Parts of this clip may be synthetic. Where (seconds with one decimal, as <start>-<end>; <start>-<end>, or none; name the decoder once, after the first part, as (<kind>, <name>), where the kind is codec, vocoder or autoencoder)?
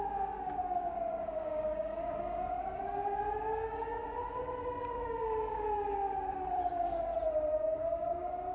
0.0-4.0 (codec, DAC); 4.8-7.1; 7.6-8.5